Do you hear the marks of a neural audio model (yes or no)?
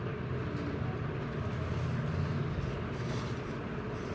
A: no